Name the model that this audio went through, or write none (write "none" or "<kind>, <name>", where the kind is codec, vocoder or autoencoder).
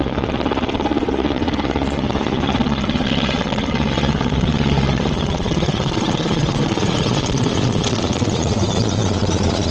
vocoder, Vocos